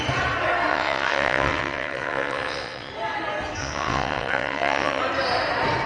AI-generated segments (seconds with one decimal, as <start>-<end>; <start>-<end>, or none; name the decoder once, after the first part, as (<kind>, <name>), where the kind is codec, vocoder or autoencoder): 0.7-2.9 (vocoder, WaveNeXt); 3.6-5.0